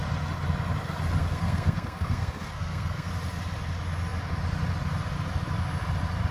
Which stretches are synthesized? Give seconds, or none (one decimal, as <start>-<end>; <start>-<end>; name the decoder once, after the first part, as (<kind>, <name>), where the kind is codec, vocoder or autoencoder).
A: 1.2-3.1 (codec, SNAC)